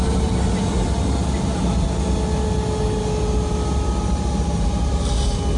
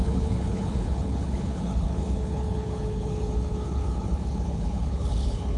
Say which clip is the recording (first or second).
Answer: first